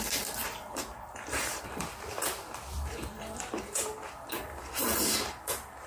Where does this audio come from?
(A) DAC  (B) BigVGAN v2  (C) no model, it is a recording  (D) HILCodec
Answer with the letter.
B